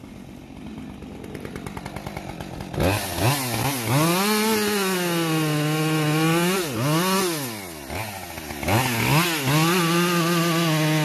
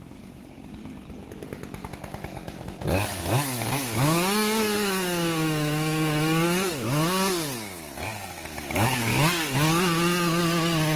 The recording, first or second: first